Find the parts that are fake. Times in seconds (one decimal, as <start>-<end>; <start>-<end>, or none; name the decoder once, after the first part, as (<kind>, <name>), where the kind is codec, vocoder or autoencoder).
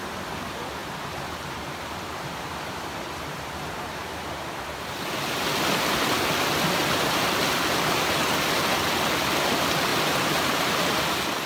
0.8-4.4 (vocoder, BigVGAN v2); 6.8-7.4; 9.9-11.0